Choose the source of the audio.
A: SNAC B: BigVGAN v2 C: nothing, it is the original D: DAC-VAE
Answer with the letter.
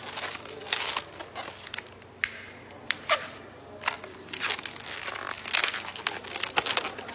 C